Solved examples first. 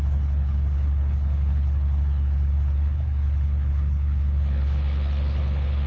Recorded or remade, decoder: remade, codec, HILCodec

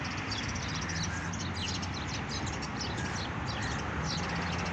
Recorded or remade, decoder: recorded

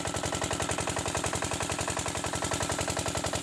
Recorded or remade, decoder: recorded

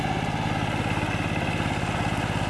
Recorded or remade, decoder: recorded